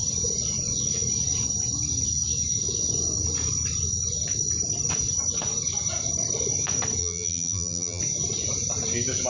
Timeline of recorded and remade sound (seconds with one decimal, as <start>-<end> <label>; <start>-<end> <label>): 0.0-7.0 recorded; 7.0-8.0 remade; 8.0-9.3 recorded